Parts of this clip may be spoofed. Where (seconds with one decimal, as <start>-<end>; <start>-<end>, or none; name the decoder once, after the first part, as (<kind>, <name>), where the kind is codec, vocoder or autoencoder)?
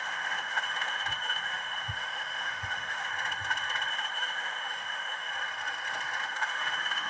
0.0-3.1 (autoencoder, DAC-VAE); 3.9-5.3; 6.2-7.1